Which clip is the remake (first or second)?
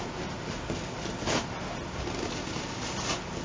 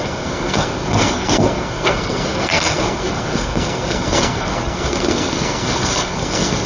second